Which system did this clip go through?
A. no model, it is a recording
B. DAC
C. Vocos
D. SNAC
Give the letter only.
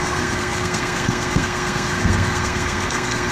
D